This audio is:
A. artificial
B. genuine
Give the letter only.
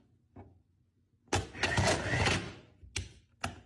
B